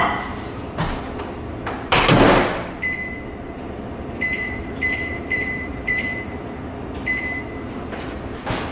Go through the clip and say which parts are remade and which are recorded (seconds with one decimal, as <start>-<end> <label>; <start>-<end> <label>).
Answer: 0.0-4.3 recorded; 4.3-6.1 remade; 6.1-8.7 recorded